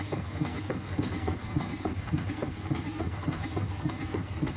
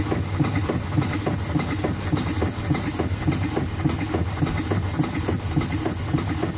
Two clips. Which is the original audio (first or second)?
second